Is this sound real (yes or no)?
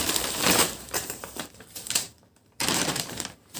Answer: no